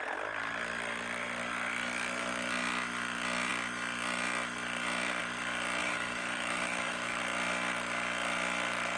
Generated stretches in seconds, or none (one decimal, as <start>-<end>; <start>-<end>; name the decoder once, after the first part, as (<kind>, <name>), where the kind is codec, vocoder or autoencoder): 5.8-7.2 (autoencoder, DAC-VAE)